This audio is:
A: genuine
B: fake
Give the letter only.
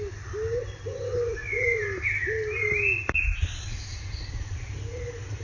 A